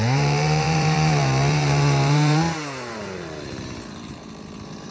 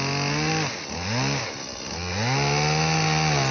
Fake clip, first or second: first